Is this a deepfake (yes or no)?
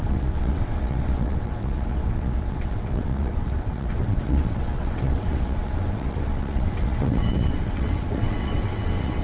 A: yes